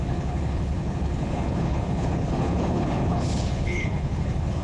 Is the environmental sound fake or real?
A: fake